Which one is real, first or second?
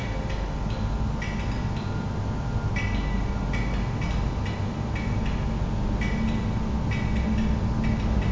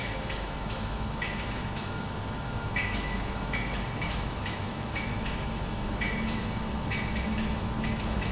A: first